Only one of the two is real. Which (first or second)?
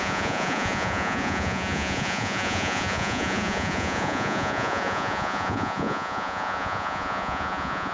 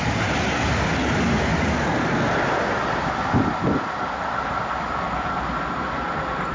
second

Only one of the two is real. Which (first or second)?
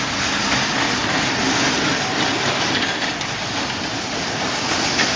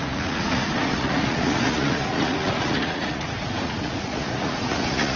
first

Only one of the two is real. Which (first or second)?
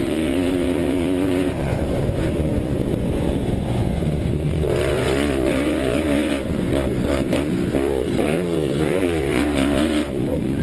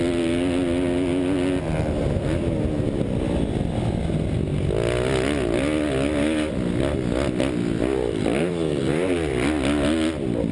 second